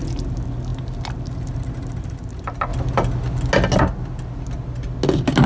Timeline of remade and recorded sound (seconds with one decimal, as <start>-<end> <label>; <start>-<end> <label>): 0.0-5.5 recorded